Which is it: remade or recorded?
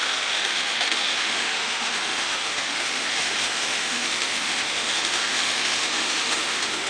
remade